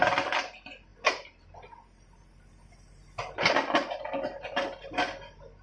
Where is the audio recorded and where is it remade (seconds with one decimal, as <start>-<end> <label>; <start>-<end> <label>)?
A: 0.0-5.6 recorded